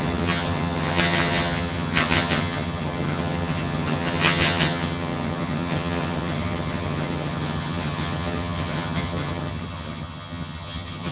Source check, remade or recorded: remade